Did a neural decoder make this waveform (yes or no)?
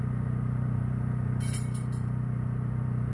yes